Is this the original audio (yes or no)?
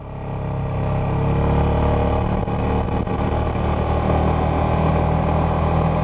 yes